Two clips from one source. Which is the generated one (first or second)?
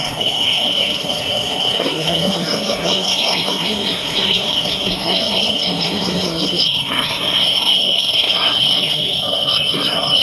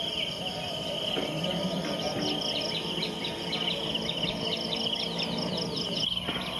first